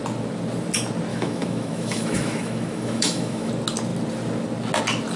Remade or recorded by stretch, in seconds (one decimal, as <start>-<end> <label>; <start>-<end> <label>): 0.0-1.1 recorded; 1.1-3.5 remade; 3.5-5.2 recorded